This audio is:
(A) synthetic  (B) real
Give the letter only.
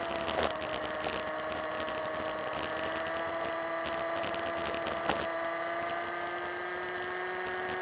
B